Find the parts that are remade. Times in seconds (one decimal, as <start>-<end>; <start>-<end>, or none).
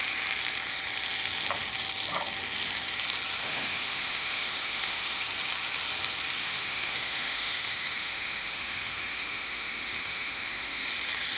3.4-5.2; 6.4-10.9